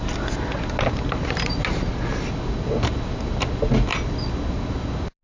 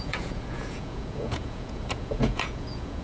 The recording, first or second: first